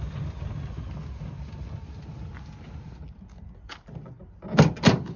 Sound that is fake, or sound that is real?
real